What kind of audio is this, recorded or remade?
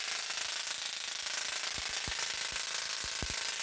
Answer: recorded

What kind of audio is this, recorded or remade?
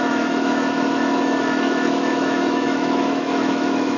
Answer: remade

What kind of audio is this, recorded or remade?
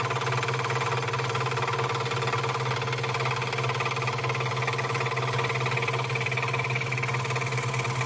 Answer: recorded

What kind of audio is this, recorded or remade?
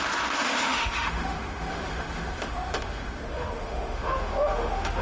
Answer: remade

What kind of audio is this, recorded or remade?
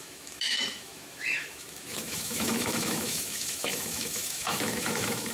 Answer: remade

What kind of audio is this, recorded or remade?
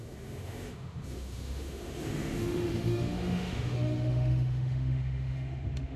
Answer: remade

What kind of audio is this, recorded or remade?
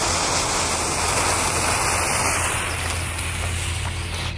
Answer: recorded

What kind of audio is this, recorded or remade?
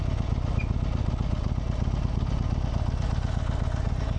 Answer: recorded